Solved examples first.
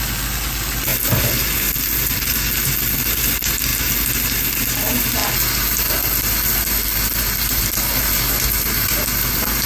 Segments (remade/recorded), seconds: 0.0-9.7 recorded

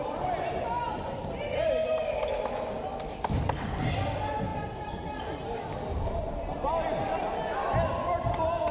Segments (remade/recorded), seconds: 0.0-8.7 recorded